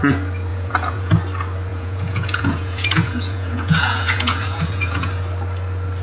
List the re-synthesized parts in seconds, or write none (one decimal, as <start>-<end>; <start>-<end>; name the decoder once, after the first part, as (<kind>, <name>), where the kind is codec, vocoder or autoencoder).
0.5-1.1 (vocoder, Vocos); 1.7-5.1